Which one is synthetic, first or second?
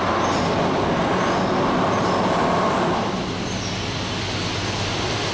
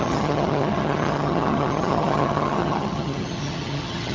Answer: second